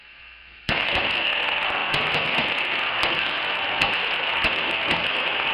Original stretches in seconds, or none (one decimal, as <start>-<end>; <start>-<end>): none